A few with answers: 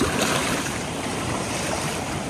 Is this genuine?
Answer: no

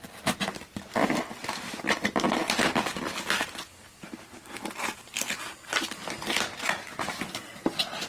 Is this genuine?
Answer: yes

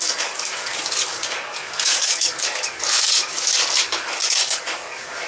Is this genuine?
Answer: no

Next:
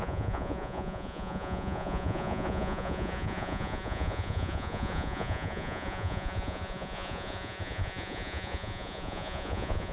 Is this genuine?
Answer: no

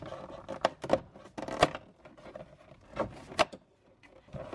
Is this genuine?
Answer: yes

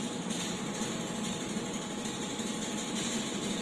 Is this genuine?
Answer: no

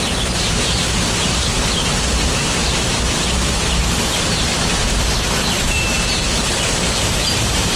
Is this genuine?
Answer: no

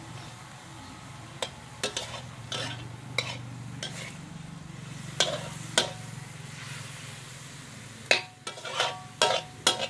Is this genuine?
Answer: yes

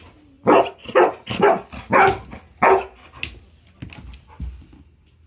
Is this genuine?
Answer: yes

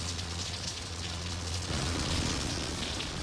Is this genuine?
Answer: no